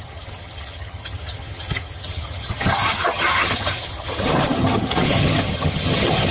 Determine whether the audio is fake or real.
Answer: fake